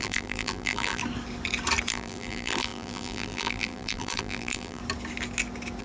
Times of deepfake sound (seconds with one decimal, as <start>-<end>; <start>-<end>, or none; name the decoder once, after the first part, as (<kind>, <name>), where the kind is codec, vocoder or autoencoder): 0.0-1.0 (vocoder, BigVGAN v2); 1.9-4.8